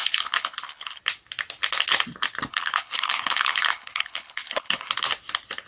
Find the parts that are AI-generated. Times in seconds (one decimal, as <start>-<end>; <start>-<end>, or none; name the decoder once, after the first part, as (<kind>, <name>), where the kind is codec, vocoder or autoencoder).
0.0-1.0 (codec, HILCodec); 2.5-4.9